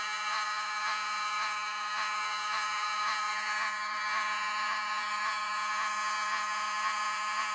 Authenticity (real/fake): fake